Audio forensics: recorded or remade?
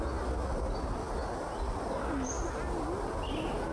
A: recorded